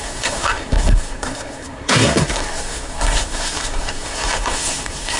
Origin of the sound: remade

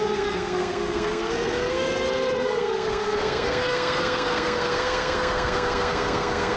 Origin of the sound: remade